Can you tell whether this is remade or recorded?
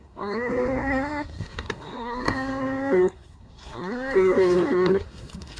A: remade